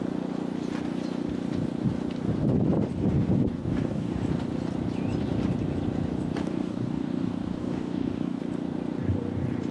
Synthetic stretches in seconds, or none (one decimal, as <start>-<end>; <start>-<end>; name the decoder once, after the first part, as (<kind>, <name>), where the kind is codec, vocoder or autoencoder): 3.5-4.2 (codec, DAC); 6.4-8.4